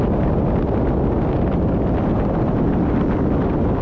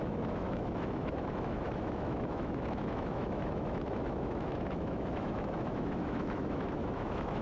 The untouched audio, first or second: first